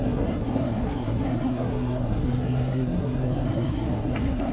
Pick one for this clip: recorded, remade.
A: remade